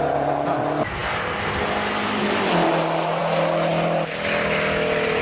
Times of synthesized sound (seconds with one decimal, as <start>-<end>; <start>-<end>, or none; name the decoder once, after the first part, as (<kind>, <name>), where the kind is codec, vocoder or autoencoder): 3.7-5.2 (vocoder, BigVGAN v2)